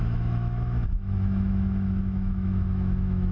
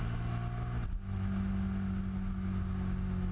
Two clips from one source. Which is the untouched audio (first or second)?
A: second